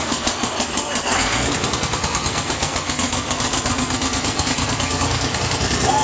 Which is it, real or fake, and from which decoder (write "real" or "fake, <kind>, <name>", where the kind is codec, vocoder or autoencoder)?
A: fake, codec, SNAC